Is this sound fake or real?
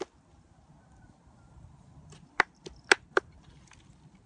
real